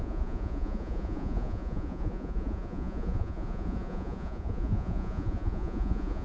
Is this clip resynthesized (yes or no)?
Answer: yes